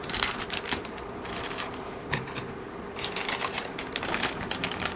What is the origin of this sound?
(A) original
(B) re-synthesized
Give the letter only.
B